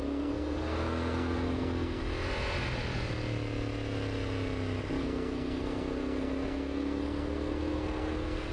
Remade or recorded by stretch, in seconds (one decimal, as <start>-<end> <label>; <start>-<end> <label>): 0.0-2.0 remade; 2.0-5.0 recorded; 5.0-8.5 remade